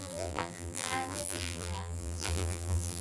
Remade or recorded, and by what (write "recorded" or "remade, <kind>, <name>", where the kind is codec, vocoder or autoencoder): remade, vocoder, BigVGAN v2